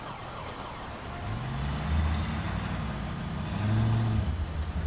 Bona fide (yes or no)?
yes